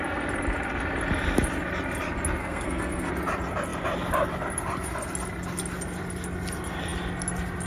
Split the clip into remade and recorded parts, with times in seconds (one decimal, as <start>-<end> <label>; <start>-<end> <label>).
0.0-2.4 recorded; 2.4-3.1 remade; 3.1-7.7 recorded